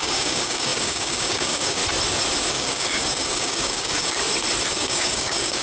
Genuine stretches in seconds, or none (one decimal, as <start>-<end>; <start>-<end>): 1.8-2.5; 4.2-4.7